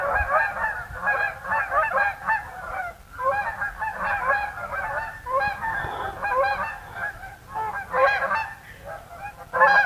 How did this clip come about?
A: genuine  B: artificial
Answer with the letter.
A